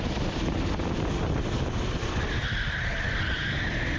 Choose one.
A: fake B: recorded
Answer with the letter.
B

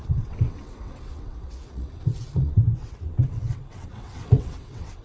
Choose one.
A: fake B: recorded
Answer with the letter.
A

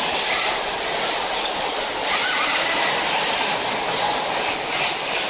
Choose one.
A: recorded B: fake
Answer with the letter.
A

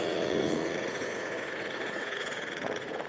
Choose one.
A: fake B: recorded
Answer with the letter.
A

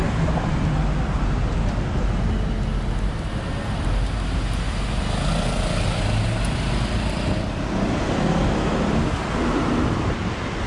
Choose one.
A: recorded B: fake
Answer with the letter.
A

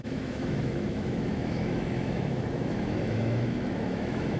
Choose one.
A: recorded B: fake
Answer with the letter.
B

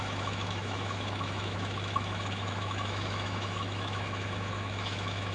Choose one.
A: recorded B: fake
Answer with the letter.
B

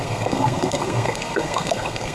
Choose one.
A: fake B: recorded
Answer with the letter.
A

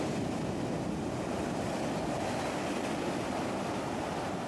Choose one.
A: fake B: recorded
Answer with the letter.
B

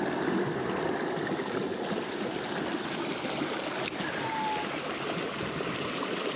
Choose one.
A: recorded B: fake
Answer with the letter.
A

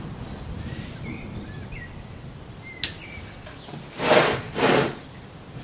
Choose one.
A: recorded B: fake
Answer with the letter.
A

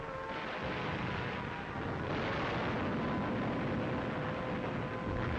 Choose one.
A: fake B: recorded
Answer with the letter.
B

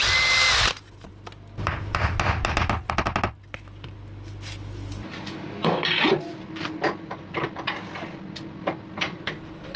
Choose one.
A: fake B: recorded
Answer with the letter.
B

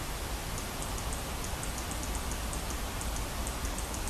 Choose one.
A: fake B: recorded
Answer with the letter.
B